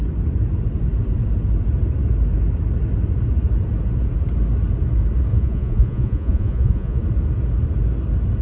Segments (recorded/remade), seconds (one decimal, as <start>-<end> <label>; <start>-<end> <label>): 0.0-5.3 recorded; 5.3-7.0 remade; 7.0-8.4 recorded